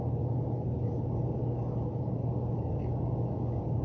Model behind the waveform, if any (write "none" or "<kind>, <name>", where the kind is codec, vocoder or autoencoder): none